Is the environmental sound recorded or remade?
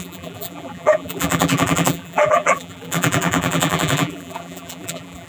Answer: remade